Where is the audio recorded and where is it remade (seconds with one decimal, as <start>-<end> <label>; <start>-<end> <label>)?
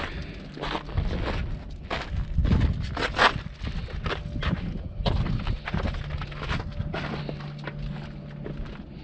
0.0-9.0 recorded